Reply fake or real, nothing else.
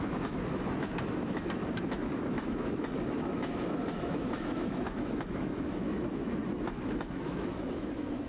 fake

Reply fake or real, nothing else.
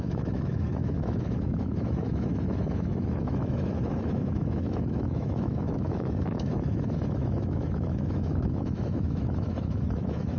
fake